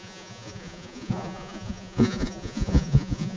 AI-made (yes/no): yes